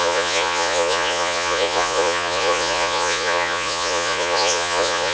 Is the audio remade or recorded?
remade